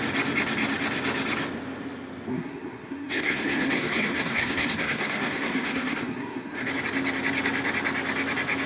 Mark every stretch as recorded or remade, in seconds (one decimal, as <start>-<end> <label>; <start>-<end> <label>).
0.0-2.3 recorded; 2.3-6.7 remade; 6.7-8.7 recorded